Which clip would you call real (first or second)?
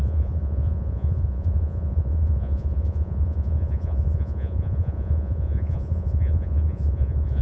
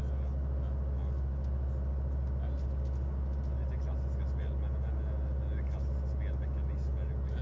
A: second